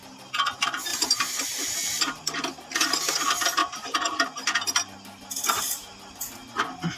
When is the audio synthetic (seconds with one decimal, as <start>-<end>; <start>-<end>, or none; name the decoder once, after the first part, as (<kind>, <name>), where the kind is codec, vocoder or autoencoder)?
0.9-2.2 (vocoder, BigVGAN v2)